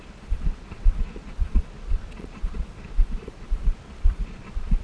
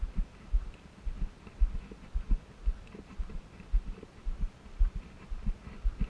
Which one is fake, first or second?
first